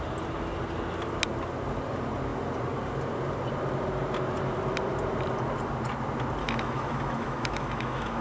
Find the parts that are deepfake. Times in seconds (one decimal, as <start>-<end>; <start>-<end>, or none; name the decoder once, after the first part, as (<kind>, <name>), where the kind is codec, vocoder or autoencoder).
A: 6.4-8.2 (autoencoder, DAC-VAE)